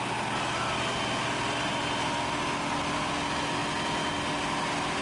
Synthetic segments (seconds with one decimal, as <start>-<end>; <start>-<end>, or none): none